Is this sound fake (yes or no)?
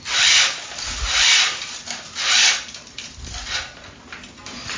no